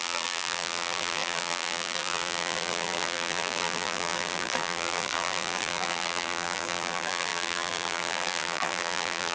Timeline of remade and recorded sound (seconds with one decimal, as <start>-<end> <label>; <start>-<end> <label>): 0.0-9.3 remade